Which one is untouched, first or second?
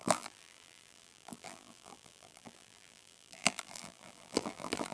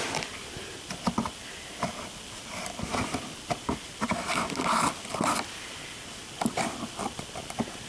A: second